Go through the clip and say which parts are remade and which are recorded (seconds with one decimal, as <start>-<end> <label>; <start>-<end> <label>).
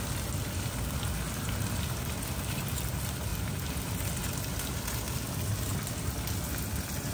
0.0-3.3 recorded; 3.3-4.0 remade; 4.0-7.1 recorded